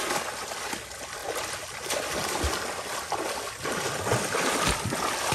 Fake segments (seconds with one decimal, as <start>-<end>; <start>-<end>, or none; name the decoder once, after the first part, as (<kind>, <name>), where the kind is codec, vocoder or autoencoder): none